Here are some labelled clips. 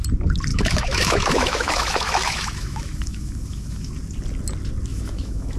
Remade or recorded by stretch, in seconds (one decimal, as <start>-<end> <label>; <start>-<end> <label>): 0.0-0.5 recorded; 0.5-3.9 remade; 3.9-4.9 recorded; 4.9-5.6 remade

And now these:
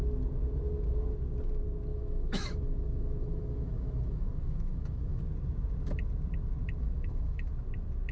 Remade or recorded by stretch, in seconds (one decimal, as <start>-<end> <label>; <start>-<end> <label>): 0.0-1.9 recorded; 1.9-5.2 remade; 5.2-6.8 recorded; 6.8-7.5 remade; 7.5-8.1 recorded

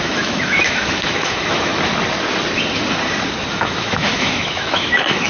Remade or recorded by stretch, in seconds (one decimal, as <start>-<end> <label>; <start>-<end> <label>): 0.0-1.7 remade; 1.7-3.5 recorded; 3.5-5.3 remade

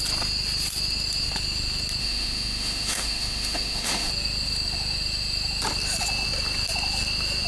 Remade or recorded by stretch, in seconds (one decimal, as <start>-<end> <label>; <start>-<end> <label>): 0.0-2.0 recorded; 2.0-4.1 remade; 4.1-7.5 recorded

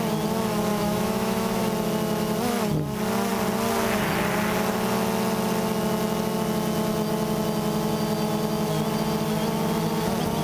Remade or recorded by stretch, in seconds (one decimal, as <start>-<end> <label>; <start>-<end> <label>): 0.0-0.7 recorded; 0.7-1.6 remade; 1.6-10.4 recorded

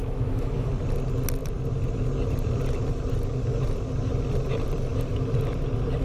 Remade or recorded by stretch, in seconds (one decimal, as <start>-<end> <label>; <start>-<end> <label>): 0.0-0.7 remade; 0.7-6.0 recorded

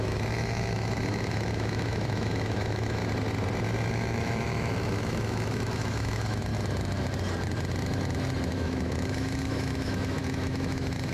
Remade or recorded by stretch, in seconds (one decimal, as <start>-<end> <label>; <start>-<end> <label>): 0.0-3.0 remade; 3.0-3.9 recorded; 3.9-6.5 remade; 6.5-8.5 recorded; 8.5-11.1 remade